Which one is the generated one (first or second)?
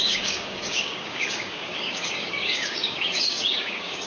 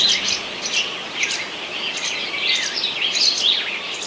first